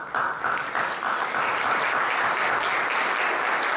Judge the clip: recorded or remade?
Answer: recorded